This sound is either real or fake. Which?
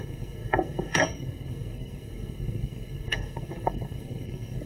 fake